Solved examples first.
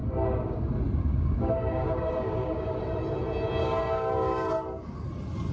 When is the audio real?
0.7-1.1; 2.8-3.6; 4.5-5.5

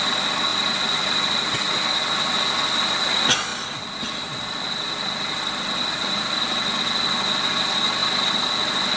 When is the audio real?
0.0-0.5; 1.5-3.5; 6.8-9.0

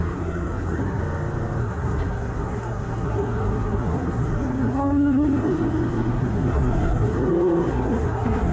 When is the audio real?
1.0-1.6

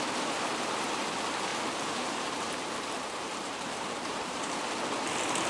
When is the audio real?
0.0-1.5; 4.6-5.5

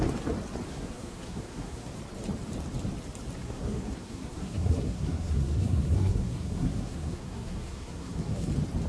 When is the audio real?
0.0-0.7; 1.9-3.4; 8.5-8.9